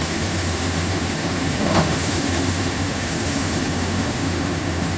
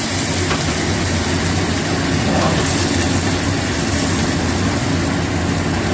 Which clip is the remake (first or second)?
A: first